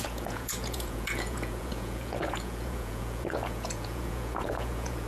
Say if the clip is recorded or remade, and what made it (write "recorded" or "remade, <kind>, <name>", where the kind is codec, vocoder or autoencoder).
remade, vocoder, Vocos